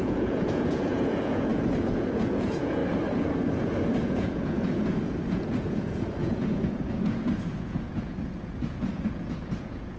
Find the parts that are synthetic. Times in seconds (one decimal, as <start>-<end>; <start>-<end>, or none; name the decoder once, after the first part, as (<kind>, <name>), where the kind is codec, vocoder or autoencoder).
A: 0.0-2.8 (vocoder, Vocos); 3.6-10.0